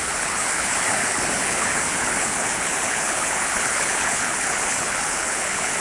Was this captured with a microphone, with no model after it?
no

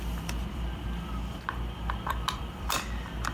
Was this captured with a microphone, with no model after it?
no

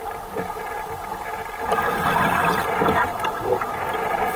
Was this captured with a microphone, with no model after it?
no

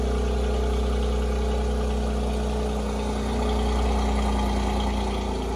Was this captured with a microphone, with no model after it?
yes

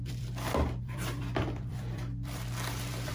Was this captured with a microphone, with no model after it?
no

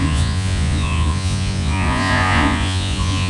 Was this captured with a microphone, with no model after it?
no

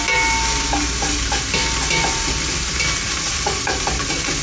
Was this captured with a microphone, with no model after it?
yes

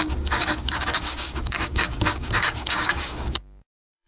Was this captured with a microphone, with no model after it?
no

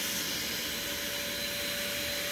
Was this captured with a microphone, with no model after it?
yes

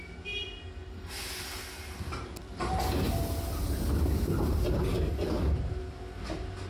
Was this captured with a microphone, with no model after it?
yes